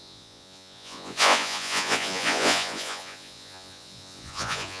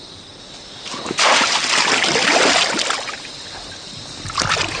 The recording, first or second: second